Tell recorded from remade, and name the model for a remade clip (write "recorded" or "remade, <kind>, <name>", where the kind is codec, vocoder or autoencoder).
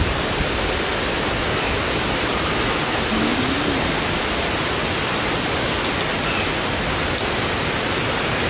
recorded